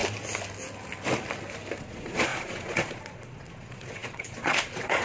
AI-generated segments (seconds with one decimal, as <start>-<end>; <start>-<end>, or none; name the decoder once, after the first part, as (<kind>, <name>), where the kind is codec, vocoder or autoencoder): 1.8-5.0 (vocoder, Vocos)